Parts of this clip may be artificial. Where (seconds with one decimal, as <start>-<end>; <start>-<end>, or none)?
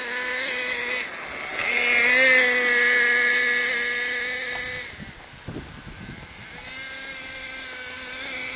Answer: none